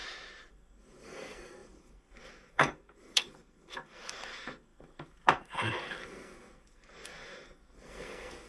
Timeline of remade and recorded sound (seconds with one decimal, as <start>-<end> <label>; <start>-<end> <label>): 0.0-0.5 recorded; 0.5-8.5 remade